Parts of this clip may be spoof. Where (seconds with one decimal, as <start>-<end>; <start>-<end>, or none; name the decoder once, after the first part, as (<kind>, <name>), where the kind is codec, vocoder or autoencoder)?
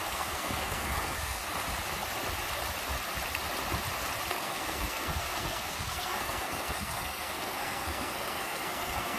0.0-1.4 (codec, SNAC); 4.3-9.2